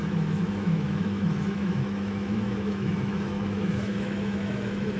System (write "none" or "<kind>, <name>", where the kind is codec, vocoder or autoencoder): autoencoder, DAC-VAE